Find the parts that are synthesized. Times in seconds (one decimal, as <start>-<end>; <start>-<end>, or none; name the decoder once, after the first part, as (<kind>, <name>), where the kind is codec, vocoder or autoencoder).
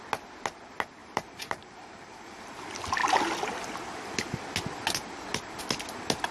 1.0-2.5 (vocoder, BigVGAN v2)